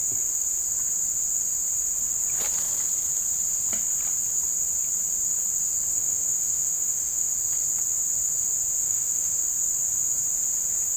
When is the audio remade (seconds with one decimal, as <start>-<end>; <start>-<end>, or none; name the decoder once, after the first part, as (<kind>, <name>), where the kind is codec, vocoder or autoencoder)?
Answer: 5.9-7.3 (autoencoder, DAC-VAE); 8.8-9.4